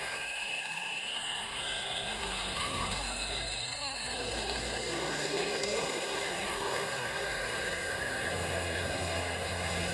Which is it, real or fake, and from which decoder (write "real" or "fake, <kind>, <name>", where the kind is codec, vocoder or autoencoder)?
fake, codec, SNAC